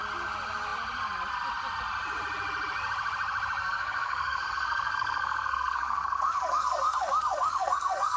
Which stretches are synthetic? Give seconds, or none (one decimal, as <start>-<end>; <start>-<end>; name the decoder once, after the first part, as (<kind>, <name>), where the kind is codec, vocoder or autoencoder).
3.6-8.2 (codec, SNAC)